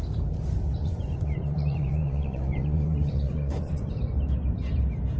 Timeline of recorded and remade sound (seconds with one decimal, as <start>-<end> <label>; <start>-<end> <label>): 0.0-0.8 recorded; 0.8-3.9 remade; 3.9-5.2 recorded